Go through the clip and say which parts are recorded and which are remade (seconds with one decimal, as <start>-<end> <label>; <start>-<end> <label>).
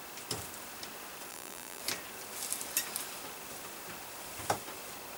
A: 0.0-1.3 recorded; 1.3-1.8 remade; 1.8-5.2 recorded